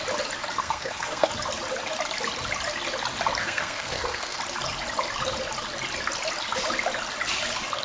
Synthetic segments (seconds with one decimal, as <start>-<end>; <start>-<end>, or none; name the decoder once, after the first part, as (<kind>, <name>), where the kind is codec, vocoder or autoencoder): 0.6-1.3 (codec, SNAC); 3.4-4.4